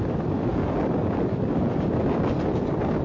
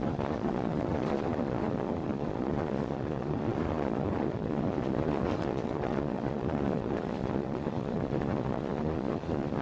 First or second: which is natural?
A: first